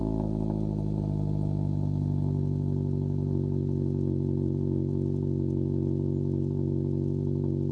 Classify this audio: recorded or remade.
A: recorded